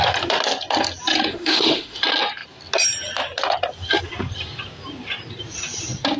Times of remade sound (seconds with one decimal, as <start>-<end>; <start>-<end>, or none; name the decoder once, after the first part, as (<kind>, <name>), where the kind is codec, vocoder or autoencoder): 1.3-2.0 (autoencoder, DAC-VAE)